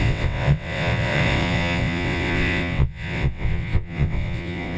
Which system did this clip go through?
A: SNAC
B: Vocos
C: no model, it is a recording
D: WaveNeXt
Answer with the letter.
D